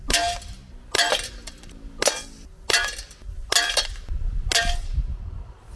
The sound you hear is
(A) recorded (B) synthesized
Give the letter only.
A